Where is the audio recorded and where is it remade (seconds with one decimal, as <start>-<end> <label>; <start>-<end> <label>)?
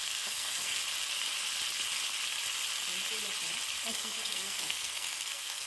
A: 0.0-0.8 remade; 0.8-3.9 recorded; 3.9-5.7 remade